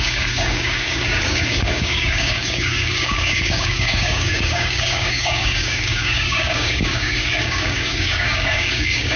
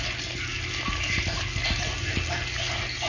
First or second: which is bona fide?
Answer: second